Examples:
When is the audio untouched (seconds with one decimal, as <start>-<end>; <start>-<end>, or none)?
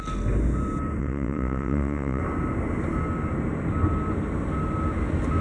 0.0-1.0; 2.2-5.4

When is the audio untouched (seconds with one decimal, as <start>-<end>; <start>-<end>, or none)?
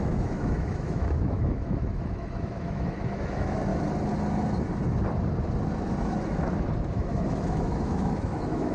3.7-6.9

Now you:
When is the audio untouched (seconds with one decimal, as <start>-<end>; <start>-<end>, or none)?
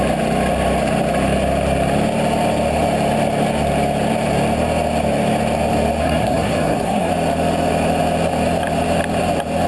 0.0-6.0; 7.1-9.7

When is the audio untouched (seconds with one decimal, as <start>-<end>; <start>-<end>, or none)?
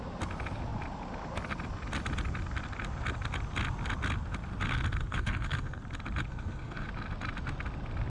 0.0-5.1; 5.8-6.3; 6.9-8.1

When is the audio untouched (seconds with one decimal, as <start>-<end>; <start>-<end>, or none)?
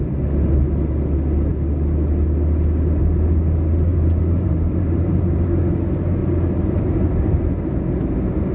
0.0-3.9; 5.3-6.2; 7.6-8.5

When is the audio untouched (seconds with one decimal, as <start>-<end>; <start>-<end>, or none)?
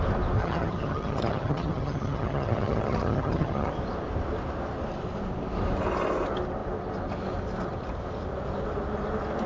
0.0-0.4; 3.7-9.5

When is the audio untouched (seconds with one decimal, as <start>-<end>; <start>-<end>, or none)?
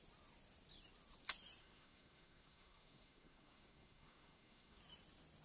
0.0-1.6; 4.8-5.4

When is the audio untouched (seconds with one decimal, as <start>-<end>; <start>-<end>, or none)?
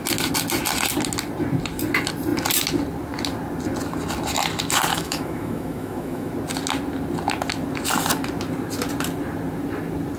0.0-4.9; 6.3-10.2